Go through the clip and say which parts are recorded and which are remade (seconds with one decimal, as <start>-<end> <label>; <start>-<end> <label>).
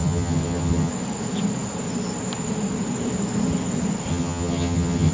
0.0-0.9 remade; 0.9-4.1 recorded; 4.1-5.1 remade